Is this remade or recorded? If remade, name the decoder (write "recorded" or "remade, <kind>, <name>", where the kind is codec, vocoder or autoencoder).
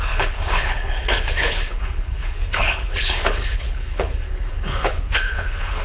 remade, codec, HILCodec